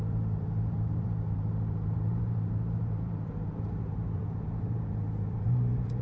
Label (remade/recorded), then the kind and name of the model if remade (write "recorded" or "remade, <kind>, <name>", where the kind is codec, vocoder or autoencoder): remade, vocoder, BigVGAN v2